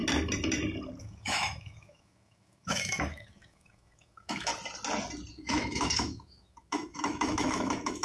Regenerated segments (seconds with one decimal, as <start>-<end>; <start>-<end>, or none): 1.0-4.5; 5.3-8.0